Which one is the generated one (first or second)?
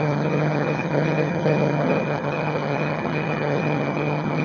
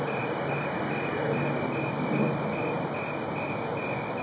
first